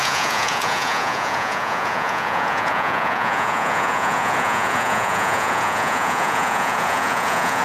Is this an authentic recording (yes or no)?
no